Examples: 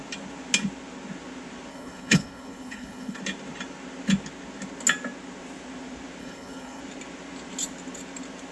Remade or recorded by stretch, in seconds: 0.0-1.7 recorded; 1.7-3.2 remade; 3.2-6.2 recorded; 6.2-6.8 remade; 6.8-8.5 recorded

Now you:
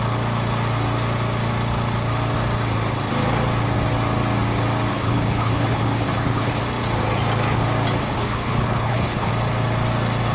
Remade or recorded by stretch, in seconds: 0.0-4.9 recorded; 4.9-6.6 remade; 6.6-8.0 recorded; 8.0-9.3 remade; 9.3-10.3 recorded

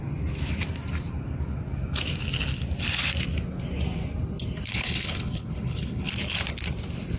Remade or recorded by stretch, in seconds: 0.0-4.7 recorded; 4.7-6.1 remade; 6.1-7.2 recorded

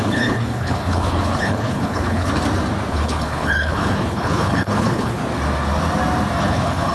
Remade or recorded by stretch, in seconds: 0.0-2.3 remade; 2.3-2.9 recorded; 2.9-5.2 remade; 5.2-6.4 recorded; 6.4-6.9 remade

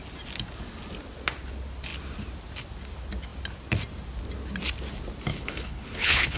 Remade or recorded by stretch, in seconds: 0.0-5.3 recorded; 5.3-6.4 remade

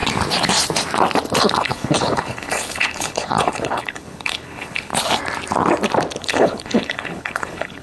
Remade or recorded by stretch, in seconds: 0.0-1.4 recorded; 1.4-4.9 remade; 4.9-6.2 recorded; 6.2-7.8 remade